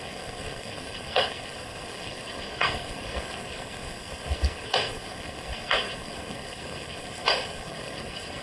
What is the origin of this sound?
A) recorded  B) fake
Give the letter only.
B